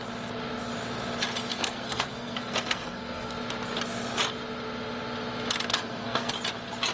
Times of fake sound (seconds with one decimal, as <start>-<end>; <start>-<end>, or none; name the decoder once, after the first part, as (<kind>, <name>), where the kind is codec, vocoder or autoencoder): 1.5-3.3 (codec, SNAC); 5.7-6.3